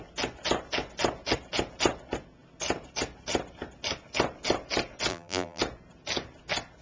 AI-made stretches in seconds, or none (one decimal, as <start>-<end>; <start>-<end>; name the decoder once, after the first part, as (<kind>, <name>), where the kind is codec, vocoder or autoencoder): 5.1-5.6 (vocoder, BigVGAN v2)